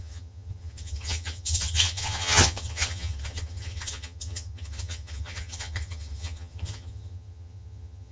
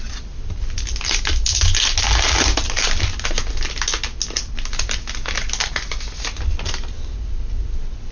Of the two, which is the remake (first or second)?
first